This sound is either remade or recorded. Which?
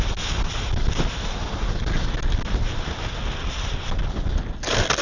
recorded